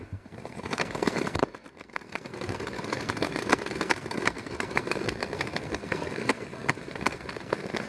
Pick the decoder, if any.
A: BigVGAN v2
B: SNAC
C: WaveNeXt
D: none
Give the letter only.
B